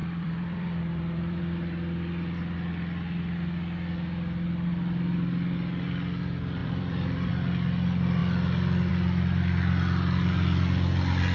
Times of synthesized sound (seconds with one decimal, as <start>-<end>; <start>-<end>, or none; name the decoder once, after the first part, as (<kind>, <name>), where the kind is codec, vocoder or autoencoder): 0.0-1.4 (vocoder, BigVGAN v2); 6.6-7.3